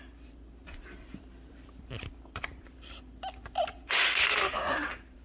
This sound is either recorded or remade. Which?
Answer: remade